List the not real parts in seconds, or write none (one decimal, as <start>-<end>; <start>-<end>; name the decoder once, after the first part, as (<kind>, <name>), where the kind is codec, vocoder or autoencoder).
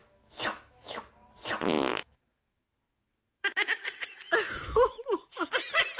0.0-1.1 (autoencoder, DAC-VAE); 1.9-5.5